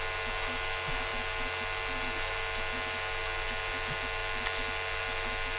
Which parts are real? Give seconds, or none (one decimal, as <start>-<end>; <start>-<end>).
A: 0.0-5.6

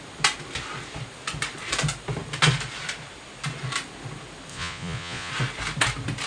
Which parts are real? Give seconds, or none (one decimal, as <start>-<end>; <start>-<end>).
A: 0.0-4.5; 5.3-6.3